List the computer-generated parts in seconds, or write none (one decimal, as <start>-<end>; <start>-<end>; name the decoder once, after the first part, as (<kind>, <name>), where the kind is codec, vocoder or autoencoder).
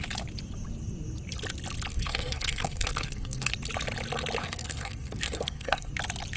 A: 1.9-3.5 (codec, SNAC); 4.4-5.9